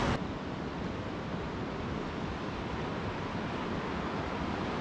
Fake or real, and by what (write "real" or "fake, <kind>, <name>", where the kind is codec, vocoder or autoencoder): real